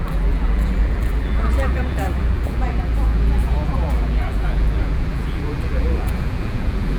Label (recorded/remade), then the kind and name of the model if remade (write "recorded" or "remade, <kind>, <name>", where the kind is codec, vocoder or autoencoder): remade, vocoder, BigVGAN v2